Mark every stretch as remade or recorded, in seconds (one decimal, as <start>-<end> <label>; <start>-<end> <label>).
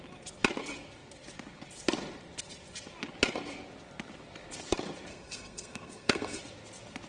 0.0-5.1 recorded; 5.1-6.4 remade; 6.4-7.1 recorded